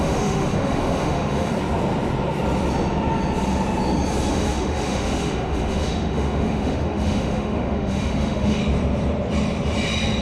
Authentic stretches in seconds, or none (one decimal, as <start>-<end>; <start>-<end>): 1.5-4.3; 8.6-10.2